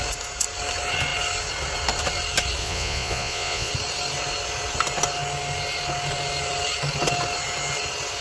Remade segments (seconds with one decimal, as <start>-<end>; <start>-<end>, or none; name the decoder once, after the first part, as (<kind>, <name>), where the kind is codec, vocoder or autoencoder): 2.6-3.7 (vocoder, Vocos)